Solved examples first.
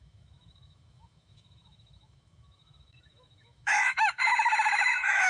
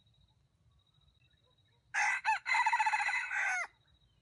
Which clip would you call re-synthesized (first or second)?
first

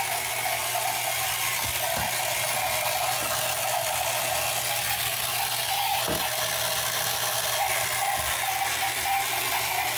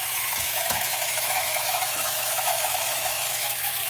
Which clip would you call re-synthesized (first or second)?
second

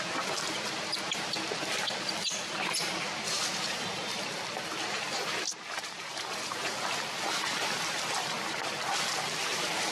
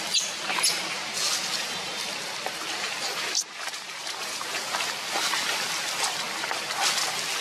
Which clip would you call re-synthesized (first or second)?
first